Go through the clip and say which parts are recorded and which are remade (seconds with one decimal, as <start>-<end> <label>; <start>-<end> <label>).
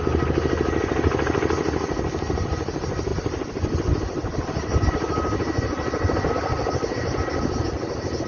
0.0-8.3 recorded